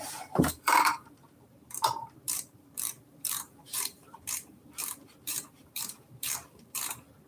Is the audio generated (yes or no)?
yes